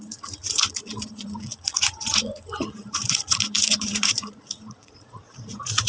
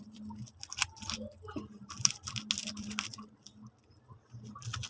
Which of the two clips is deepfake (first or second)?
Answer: first